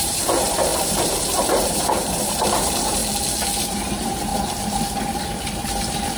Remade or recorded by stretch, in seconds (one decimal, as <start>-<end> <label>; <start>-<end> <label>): 0.0-3.0 remade; 3.0-3.6 recorded; 3.6-4.3 remade; 4.3-5.2 recorded; 5.2-6.2 remade